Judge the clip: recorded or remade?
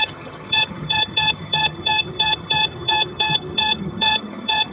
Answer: remade